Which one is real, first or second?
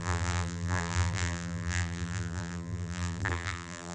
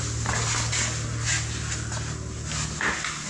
second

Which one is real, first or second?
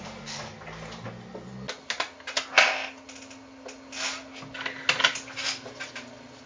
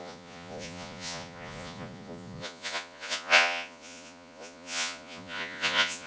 first